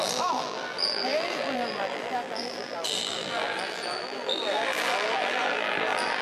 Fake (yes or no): yes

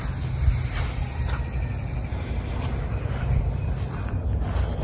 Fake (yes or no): no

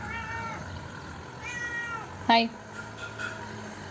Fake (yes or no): no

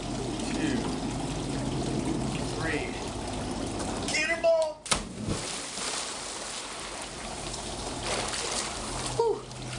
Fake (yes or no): no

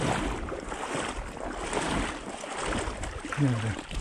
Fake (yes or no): no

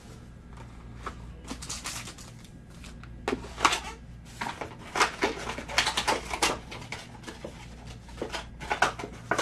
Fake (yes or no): no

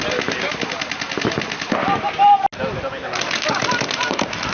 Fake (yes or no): no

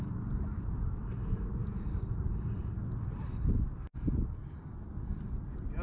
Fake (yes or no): no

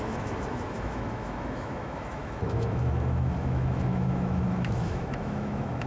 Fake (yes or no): yes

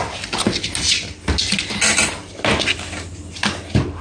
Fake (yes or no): no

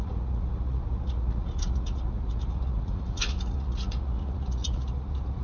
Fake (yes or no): yes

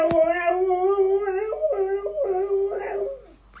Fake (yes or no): no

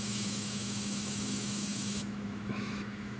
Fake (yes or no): yes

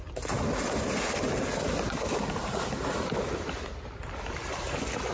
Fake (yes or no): no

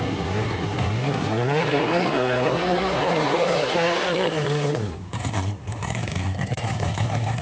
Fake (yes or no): yes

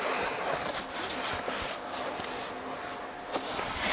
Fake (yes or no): no